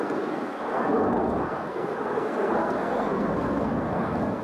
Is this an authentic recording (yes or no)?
no